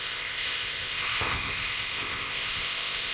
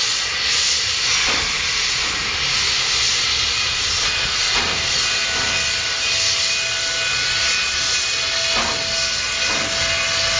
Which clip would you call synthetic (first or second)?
first